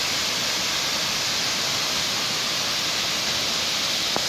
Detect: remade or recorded recorded